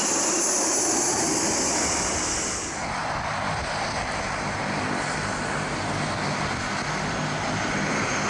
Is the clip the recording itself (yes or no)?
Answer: yes